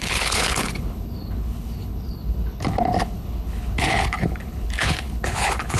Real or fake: fake